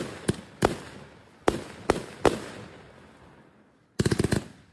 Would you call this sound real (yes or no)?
yes